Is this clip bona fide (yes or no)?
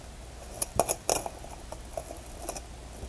yes